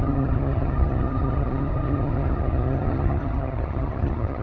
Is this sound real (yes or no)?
no